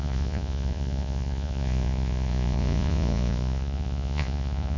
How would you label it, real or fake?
fake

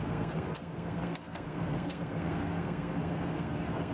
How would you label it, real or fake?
fake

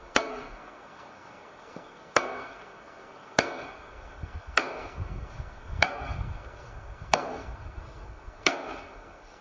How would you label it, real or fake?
fake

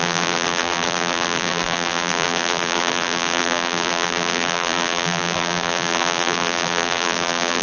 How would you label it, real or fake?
fake